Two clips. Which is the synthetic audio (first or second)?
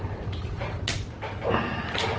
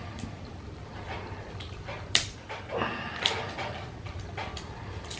second